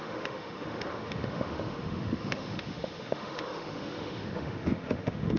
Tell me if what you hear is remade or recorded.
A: remade